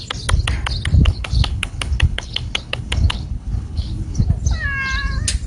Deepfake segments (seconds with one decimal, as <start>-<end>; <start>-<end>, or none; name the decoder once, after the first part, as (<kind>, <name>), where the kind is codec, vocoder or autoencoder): 1.0-4.3 (codec, HILCodec)